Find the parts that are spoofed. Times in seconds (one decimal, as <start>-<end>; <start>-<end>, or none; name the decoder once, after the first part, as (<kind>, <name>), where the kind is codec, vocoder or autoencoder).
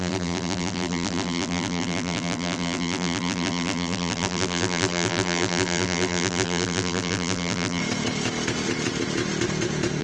0.0-7.8 (vocoder, BigVGAN v2)